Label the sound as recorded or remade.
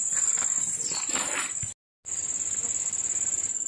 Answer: recorded